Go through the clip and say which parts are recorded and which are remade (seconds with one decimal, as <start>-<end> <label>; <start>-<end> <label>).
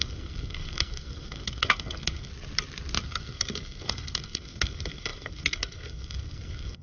0.0-2.3 remade; 2.3-3.0 recorded; 3.0-6.8 remade